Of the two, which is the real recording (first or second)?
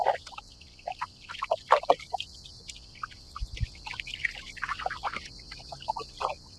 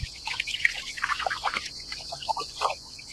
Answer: first